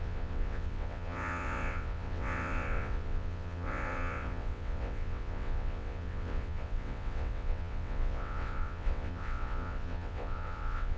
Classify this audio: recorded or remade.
remade